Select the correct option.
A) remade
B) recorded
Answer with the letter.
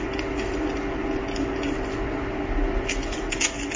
B